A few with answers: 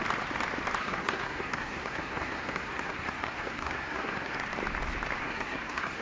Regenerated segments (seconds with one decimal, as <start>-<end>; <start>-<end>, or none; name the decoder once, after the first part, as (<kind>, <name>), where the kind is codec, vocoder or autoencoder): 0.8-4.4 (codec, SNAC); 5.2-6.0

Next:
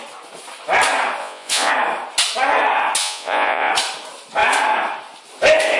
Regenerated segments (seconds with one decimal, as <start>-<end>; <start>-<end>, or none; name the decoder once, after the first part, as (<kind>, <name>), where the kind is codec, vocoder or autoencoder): 1.2-1.7 (vocoder, Vocos); 3.0-3.7

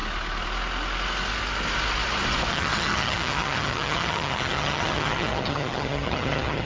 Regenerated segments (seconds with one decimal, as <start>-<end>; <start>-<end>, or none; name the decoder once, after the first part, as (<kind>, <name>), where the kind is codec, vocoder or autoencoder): 2.5-6.7 (vocoder, HiFi-GAN)